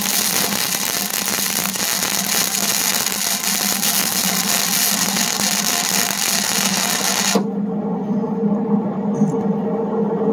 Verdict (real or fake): real